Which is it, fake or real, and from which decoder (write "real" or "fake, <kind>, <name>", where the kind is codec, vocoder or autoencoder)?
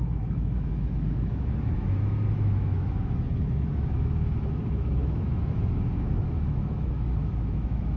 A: fake, autoencoder, DAC-VAE